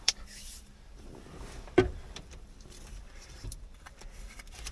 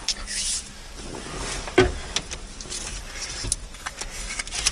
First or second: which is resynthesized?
first